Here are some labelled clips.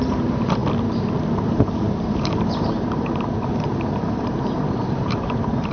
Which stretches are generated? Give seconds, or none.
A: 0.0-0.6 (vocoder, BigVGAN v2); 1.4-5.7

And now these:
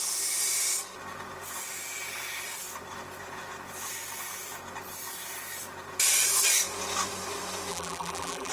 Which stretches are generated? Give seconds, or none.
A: 7.7-8.5 (vocoder, BigVGAN v2)

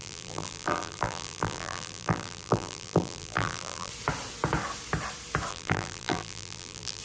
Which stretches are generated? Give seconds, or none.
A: 0.0-3.9 (vocoder, BigVGAN v2); 5.5-7.0

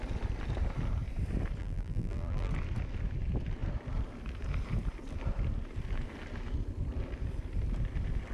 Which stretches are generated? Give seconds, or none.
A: 1.6-2.5 (vocoder, BigVGAN v2)